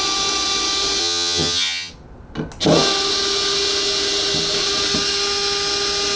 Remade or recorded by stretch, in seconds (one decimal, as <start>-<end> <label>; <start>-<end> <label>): 0.0-1.0 recorded; 1.0-1.9 remade; 1.9-6.2 recorded